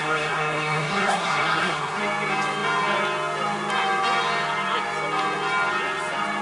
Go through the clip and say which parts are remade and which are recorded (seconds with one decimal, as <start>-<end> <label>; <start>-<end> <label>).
0.0-2.0 remade; 2.0-6.4 recorded